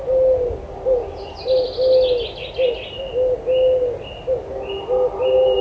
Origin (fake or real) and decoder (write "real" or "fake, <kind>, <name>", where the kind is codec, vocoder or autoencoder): real